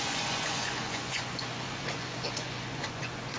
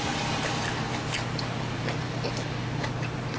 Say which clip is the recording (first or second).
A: second